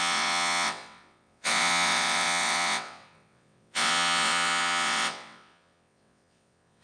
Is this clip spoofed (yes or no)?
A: yes